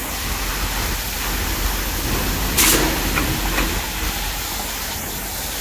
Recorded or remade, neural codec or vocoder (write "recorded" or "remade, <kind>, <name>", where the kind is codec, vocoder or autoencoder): recorded